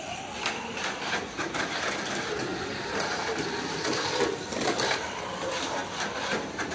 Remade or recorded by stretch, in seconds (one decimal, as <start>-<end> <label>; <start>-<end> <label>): 0.0-6.7 recorded